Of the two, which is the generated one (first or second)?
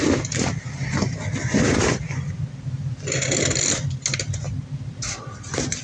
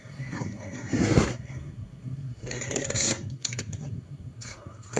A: second